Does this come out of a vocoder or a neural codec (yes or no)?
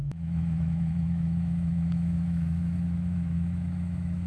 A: yes